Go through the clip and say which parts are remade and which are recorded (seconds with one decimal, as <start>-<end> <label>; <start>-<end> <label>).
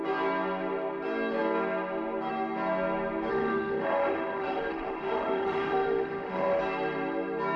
0.0-3.3 recorded; 3.3-6.6 remade; 6.6-7.6 recorded